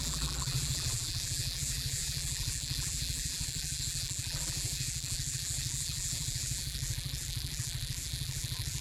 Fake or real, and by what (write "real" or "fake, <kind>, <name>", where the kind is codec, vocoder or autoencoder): fake, vocoder, BigVGAN v2